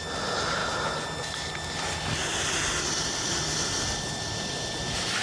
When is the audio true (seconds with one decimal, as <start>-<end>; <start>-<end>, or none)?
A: 0.0-5.2